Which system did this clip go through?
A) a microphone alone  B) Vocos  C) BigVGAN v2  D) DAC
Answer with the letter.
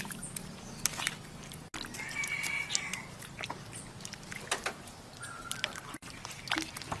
A